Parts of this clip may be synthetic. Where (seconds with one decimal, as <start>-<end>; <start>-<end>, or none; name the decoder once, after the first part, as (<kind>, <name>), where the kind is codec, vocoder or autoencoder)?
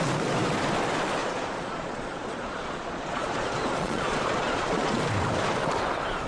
1.2-5.0 (vocoder, Vocos)